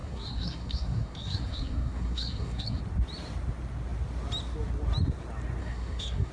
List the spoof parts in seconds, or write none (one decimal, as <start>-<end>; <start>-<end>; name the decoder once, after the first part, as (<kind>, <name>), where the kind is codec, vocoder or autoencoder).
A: 0.0-2.8 (codec, SNAC); 5.6-6.3